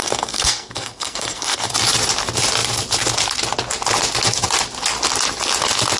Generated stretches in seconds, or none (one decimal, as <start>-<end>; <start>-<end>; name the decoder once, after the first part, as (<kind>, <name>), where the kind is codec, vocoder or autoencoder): 0.0-1.7 (codec, SNAC)